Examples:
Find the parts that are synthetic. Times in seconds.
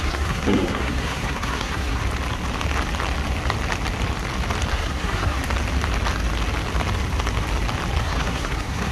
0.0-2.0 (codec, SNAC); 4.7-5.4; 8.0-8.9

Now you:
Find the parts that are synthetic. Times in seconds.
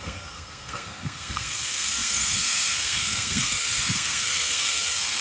0.0-5.2 (codec, SNAC)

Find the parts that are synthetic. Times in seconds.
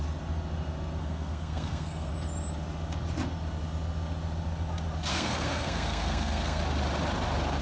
1.0-2.1 (codec, SNAC); 5.1-6.6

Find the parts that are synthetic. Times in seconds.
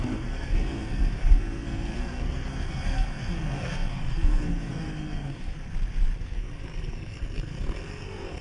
0.0-5.7 (codec, SNAC); 6.2-8.4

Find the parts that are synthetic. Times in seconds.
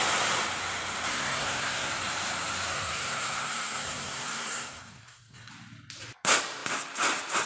1.1-1.9 (codec, SNAC); 2.7-5.5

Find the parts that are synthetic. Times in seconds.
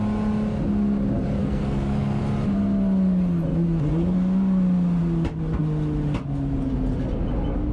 1.4-2.2 (codec, SNAC)